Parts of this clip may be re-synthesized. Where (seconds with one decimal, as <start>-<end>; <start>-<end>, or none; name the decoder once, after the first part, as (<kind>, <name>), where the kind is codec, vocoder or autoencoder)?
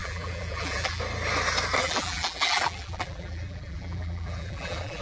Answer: 0.0-1.0 (vocoder, BigVGAN v2); 1.8-5.0